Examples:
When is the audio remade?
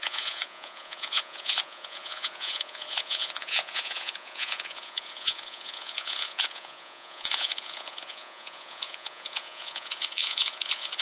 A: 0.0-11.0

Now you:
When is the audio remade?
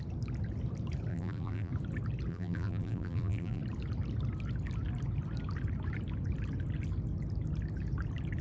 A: 1.1-1.7; 2.3-3.6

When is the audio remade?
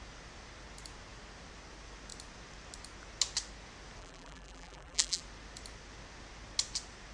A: 4.0-5.2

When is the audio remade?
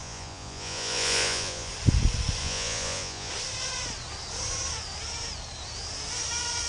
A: 0.0-1.7; 2.4-3.3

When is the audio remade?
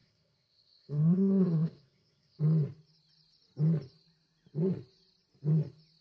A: 0.0-2.4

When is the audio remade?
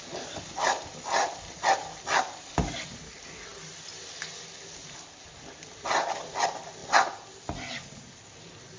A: 0.0-6.8; 8.2-8.8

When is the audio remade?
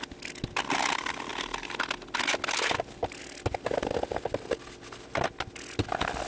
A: none